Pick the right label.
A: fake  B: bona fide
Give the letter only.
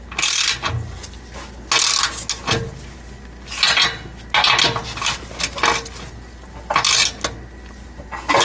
B